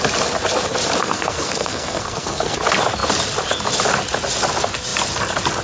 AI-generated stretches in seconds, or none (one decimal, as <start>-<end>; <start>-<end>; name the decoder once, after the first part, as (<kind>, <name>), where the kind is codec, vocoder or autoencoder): 1.0-2.6 (codec, SNAC)